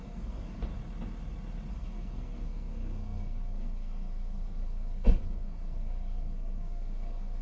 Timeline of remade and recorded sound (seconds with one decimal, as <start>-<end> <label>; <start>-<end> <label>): 0.0-0.7 remade; 0.7-1.7 recorded; 1.7-7.4 remade

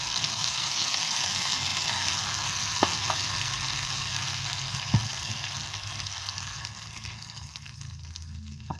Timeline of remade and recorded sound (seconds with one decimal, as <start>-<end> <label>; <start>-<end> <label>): 0.0-8.8 remade

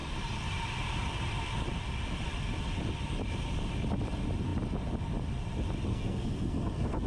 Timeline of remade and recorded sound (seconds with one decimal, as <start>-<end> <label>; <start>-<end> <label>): 0.0-5.9 recorded; 5.9-7.1 remade

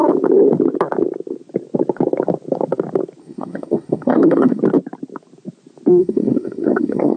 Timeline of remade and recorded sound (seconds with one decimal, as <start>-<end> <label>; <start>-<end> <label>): 0.0-3.2 recorded; 3.2-4.6 remade; 4.6-6.0 recorded; 6.0-7.2 remade